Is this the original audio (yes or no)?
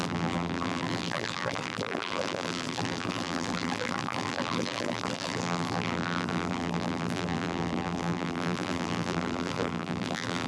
no